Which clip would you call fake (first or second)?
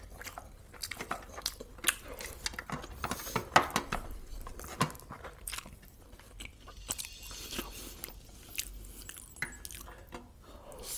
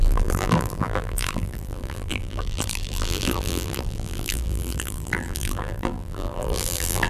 second